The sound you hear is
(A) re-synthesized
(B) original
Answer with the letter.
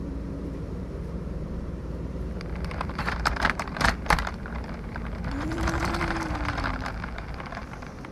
A